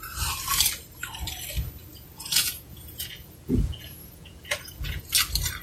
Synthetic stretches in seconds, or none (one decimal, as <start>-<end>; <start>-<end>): 1.8-5.0